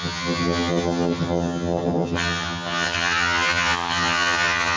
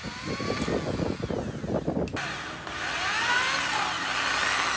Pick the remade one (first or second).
first